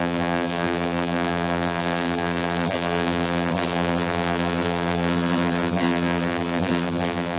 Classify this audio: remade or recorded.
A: remade